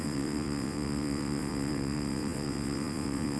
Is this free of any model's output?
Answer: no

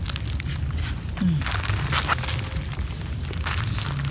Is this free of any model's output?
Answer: yes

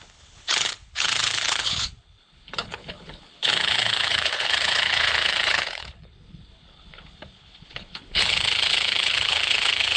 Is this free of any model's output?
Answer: no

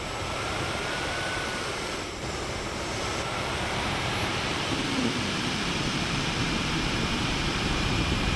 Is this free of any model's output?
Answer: no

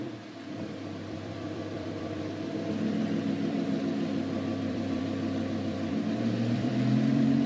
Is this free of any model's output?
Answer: no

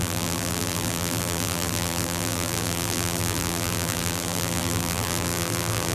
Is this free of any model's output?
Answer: no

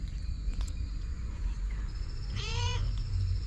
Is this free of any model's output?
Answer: no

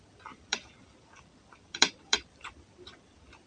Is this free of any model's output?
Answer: no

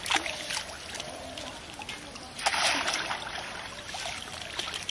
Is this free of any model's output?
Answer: yes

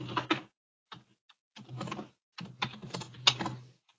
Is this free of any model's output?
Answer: yes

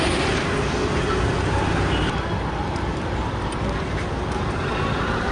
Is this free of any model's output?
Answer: yes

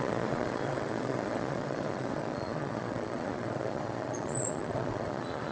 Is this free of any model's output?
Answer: no